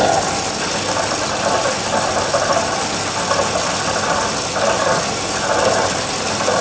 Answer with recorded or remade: recorded